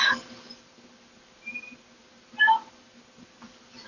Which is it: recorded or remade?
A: recorded